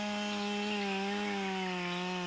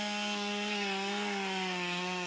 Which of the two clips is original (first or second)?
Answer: first